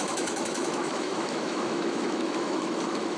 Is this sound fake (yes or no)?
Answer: yes